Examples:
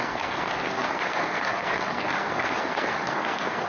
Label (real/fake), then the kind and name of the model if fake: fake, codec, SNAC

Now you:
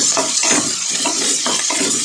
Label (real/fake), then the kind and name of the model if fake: fake, vocoder, Vocos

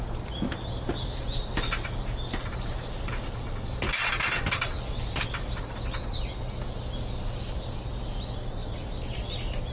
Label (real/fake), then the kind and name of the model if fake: real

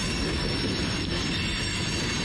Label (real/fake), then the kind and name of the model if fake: real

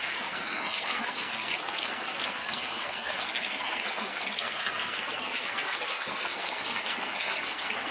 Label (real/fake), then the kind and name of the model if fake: fake, codec, SNAC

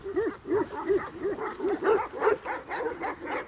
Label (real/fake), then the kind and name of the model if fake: real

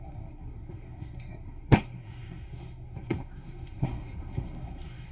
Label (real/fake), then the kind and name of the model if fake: fake, codec, SNAC